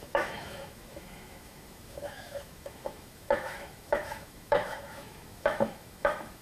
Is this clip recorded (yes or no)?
no